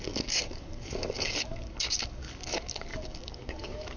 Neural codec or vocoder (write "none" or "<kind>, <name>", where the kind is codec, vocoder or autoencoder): codec, DAC